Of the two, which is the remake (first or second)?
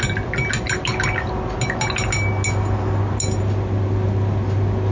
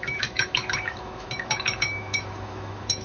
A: second